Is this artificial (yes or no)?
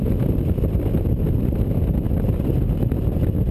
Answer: no